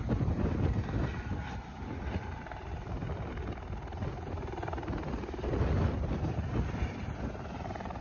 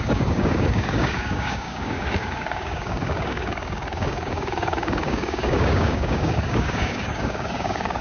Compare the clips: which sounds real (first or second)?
first